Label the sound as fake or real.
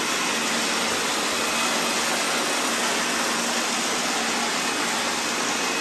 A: real